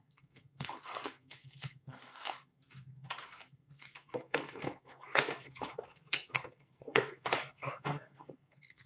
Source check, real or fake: fake